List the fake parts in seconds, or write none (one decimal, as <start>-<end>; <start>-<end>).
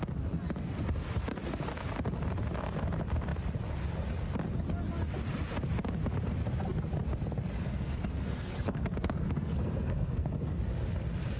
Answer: 7.7-10.6